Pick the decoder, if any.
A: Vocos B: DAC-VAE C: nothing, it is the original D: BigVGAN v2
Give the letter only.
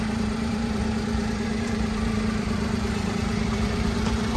D